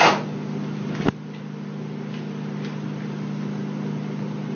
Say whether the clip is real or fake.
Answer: real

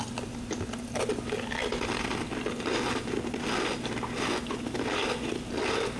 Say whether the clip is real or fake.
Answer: real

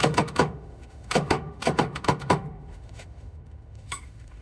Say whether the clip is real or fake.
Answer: fake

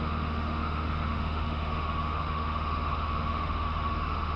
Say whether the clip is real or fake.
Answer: fake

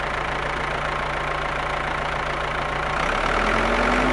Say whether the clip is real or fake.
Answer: real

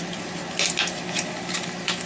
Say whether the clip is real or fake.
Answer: real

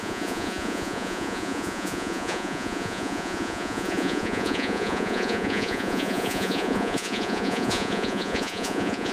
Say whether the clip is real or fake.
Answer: fake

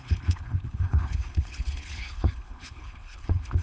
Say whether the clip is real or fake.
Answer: fake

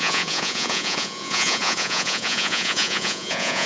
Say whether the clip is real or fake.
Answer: fake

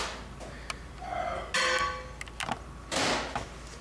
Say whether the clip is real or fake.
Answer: real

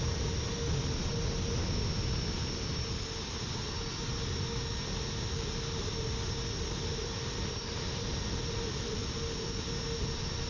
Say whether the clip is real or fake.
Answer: real